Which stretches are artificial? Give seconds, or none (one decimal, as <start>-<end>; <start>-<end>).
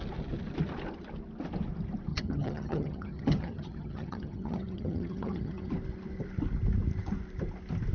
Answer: 2.1-5.7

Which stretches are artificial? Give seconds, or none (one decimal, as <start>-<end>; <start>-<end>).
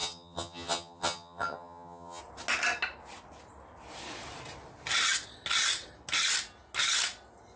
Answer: 0.0-2.2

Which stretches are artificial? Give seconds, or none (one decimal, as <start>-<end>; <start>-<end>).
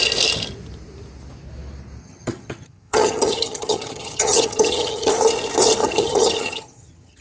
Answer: 2.0-5.1; 5.8-7.2